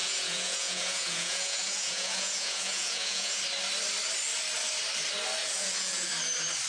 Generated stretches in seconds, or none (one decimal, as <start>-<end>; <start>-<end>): 0.0-3.4; 5.4-6.1